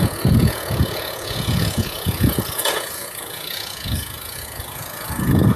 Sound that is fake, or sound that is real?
fake